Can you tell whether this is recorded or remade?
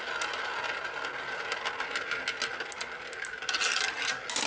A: recorded